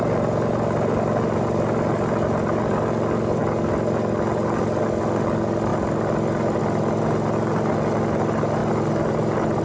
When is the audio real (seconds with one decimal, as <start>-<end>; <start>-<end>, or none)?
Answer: 0.0-8.6